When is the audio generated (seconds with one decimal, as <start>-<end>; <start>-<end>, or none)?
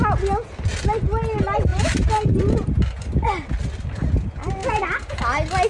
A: none